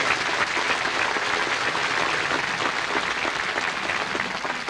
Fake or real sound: real